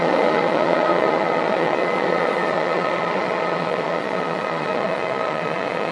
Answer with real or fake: fake